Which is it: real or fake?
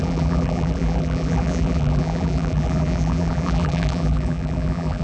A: fake